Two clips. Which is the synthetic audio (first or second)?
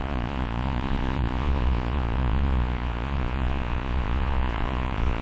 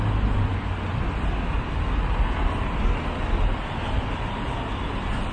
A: first